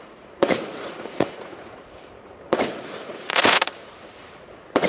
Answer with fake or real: fake